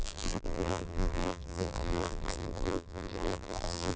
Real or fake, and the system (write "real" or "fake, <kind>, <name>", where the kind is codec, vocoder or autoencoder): fake, vocoder, BigVGAN v2